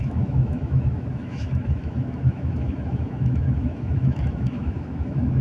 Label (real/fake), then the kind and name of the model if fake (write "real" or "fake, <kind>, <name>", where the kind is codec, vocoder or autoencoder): fake, autoencoder, DAC-VAE